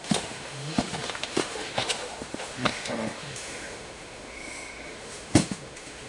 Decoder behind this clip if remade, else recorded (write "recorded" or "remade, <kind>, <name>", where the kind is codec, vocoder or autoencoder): remade, autoencoder, DAC-VAE